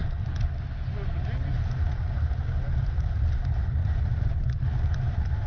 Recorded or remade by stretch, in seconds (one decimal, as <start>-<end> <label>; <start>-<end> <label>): 0.0-3.8 recorded; 3.8-4.5 remade; 4.5-5.5 recorded